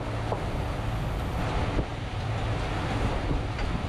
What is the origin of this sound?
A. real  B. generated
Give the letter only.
A